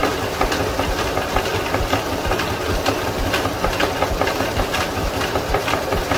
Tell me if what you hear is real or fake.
real